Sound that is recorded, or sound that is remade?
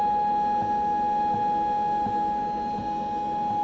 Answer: recorded